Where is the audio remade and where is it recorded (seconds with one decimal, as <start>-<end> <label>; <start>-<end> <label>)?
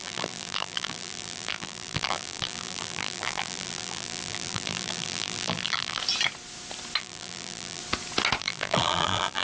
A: 0.0-6.0 remade; 6.0-7.0 recorded; 7.0-7.8 remade; 7.8-8.4 recorded; 8.4-9.4 remade